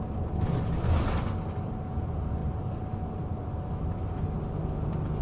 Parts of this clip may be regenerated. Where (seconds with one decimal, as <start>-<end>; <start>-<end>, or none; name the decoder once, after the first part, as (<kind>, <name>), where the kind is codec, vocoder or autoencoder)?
none